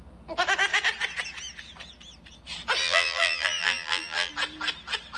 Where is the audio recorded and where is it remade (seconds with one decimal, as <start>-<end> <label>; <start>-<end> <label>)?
0.0-2.8 recorded; 2.8-4.3 remade; 4.3-5.2 recorded